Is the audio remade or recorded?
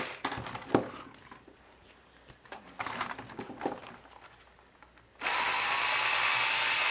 recorded